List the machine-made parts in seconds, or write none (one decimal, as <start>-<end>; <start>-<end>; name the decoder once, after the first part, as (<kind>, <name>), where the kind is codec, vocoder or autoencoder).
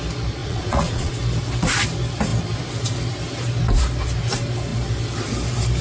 0.4-1.1 (vocoder, Vocos)